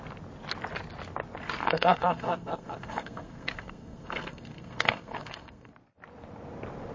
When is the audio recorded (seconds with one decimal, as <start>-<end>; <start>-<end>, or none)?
0.0-1.6; 5.7-6.9